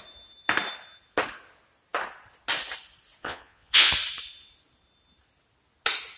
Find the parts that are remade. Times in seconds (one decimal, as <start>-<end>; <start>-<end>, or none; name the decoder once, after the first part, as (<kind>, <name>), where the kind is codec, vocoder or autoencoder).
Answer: 3.2-3.9 (vocoder, Vocos)